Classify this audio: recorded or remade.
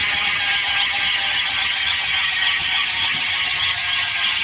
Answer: remade